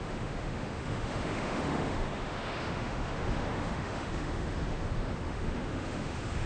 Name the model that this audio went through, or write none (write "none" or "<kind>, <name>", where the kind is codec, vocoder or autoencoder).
autoencoder, DAC-VAE